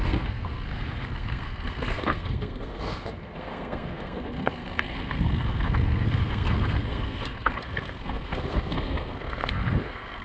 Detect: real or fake fake